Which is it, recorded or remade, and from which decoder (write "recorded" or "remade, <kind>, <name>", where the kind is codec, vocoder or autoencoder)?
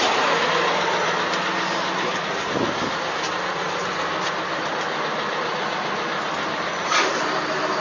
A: recorded